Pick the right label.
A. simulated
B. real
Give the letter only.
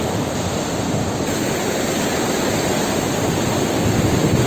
B